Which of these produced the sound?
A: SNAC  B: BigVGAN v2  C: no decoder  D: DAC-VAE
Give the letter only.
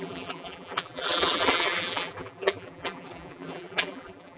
B